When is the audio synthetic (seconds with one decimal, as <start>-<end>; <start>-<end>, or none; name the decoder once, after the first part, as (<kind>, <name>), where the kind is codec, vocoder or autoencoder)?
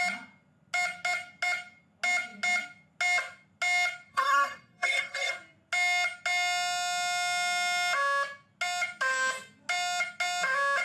4.1-5.3 (codec, SNAC)